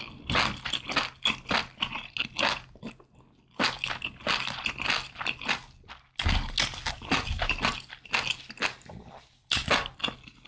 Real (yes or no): yes